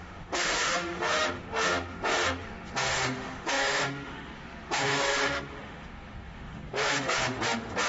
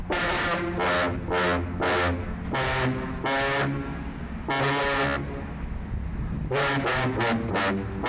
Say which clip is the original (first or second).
second